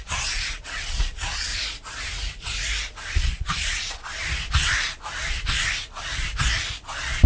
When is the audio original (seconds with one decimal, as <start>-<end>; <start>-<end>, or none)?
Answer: 1.5-3.1; 4.1-7.3